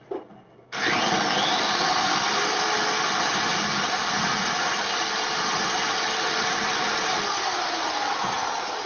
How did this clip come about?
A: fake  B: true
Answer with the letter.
B